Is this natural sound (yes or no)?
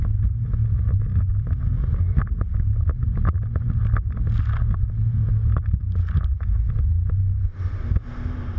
yes